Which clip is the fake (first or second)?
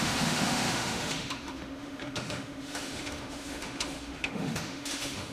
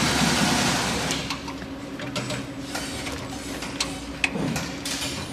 first